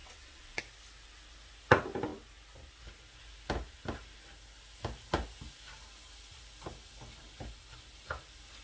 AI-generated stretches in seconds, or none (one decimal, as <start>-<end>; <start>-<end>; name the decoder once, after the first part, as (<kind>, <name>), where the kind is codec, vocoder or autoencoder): 0.0-0.6 (vocoder, WaveNeXt)